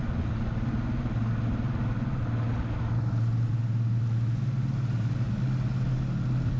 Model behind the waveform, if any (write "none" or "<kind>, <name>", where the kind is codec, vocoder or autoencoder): none